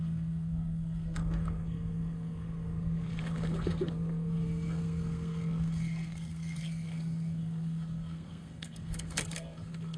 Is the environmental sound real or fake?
fake